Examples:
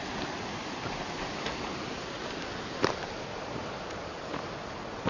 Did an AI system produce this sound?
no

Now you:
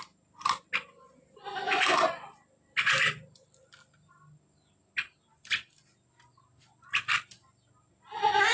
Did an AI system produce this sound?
no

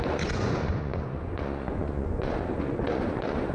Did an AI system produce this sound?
yes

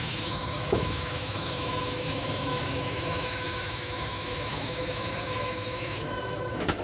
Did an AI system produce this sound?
yes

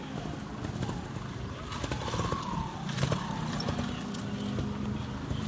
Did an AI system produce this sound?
no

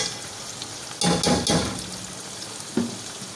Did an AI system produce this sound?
no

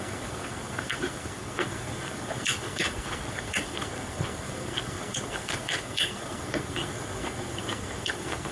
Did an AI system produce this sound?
yes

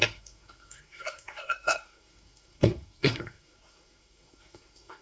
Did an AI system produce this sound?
yes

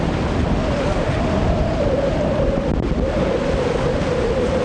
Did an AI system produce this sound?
no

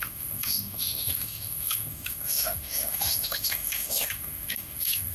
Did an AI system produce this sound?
yes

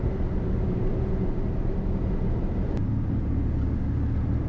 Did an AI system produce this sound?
no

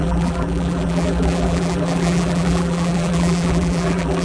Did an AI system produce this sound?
yes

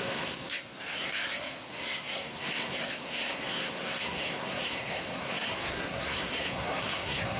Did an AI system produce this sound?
yes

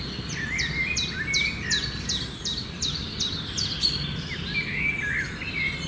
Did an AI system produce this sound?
no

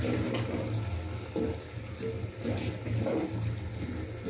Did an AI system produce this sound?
no